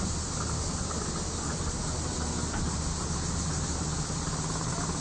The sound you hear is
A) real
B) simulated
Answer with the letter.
A